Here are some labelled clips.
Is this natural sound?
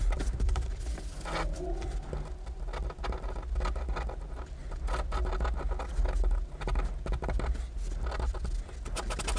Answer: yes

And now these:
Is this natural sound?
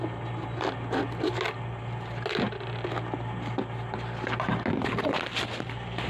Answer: yes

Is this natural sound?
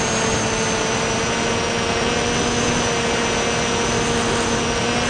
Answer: yes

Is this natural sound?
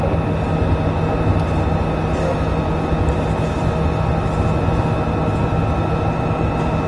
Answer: yes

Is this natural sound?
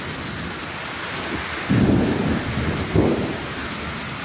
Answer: yes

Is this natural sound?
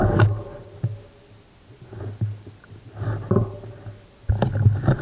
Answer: yes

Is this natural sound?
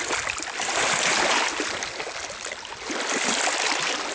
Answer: yes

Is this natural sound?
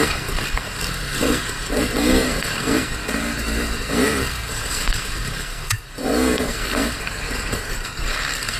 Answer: no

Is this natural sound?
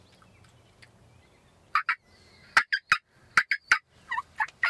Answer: yes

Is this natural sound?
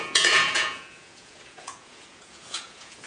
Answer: no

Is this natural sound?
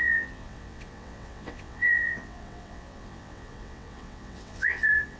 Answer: no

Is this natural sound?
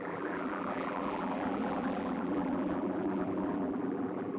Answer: no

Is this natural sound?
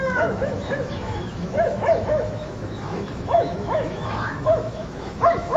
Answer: no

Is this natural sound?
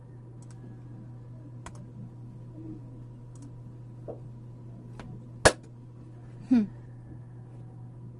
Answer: yes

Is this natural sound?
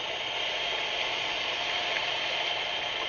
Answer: yes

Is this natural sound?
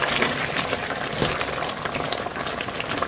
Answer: yes